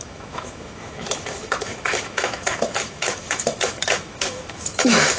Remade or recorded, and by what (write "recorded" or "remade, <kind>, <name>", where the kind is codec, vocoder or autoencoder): remade, autoencoder, DAC-VAE